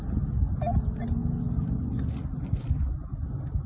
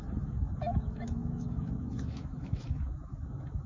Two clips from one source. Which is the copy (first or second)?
second